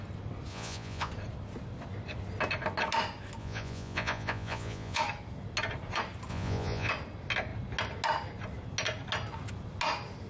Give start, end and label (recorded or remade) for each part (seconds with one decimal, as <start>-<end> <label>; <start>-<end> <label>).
0.0-0.5 recorded; 0.5-1.1 remade; 1.1-3.4 recorded; 3.4-5.0 remade; 5.0-6.3 recorded; 6.3-6.9 remade; 6.9-10.3 recorded